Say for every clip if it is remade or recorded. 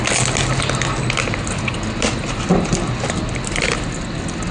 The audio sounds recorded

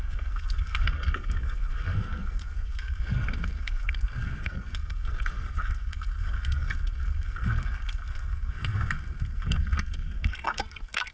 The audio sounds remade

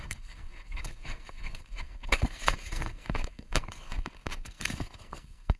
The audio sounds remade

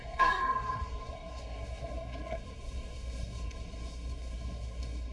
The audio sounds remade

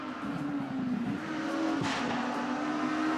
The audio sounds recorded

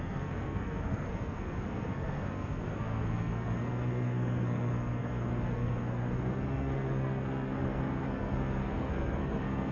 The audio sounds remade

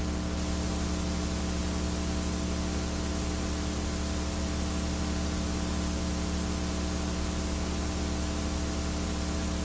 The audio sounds recorded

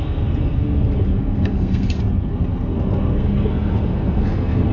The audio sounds remade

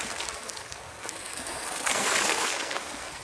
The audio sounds remade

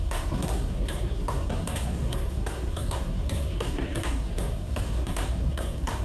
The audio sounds remade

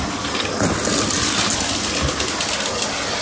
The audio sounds recorded